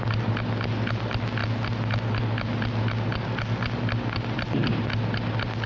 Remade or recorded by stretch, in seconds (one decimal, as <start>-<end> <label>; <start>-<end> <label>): 0.0-5.7 recorded